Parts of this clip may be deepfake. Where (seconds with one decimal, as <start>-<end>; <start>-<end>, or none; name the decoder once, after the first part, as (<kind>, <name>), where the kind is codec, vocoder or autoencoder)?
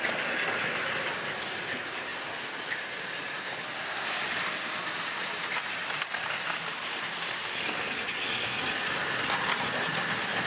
none